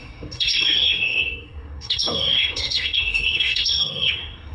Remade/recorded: remade